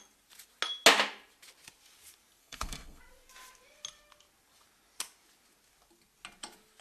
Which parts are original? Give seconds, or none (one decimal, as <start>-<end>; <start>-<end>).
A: 0.0-2.4; 3.0-6.8